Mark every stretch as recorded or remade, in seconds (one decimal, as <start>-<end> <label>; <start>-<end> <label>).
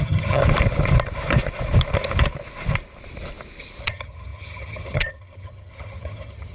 0.0-0.4 remade; 0.4-3.8 recorded; 3.8-6.5 remade